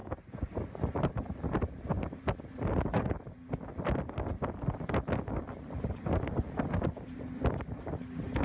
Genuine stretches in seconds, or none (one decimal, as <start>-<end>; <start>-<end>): 0.0-8.4